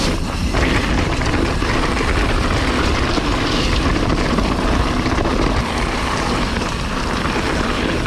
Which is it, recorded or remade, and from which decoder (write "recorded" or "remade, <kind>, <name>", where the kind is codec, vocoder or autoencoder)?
recorded